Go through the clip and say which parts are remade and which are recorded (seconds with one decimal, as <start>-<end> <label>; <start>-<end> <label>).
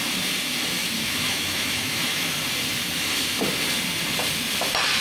0.0-0.8 recorded; 0.8-2.3 remade; 2.3-5.0 recorded